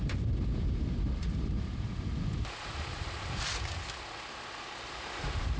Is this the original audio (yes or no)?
yes